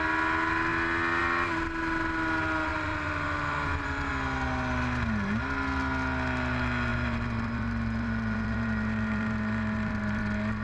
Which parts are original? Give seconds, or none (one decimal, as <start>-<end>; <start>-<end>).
0.0-2.7; 4.1-6.9; 10.2-10.6